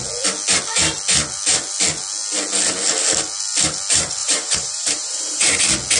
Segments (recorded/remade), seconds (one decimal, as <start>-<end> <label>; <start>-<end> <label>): 0.0-4.2 recorded; 4.2-5.6 remade; 5.6-6.0 recorded